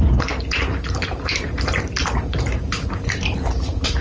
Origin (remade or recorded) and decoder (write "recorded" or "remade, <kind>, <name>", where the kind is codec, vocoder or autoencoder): remade, vocoder, BigVGAN v2